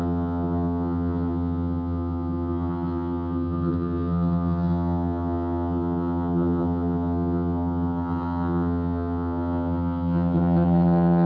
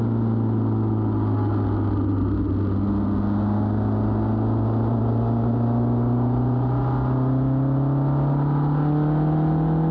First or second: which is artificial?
first